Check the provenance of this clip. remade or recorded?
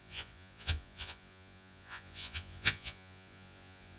remade